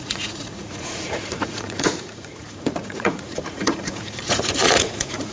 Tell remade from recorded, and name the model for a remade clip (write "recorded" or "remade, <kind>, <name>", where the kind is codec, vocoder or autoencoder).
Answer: remade, vocoder, Vocos